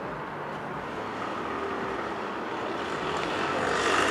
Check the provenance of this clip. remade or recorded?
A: recorded